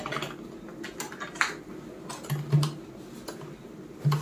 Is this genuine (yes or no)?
yes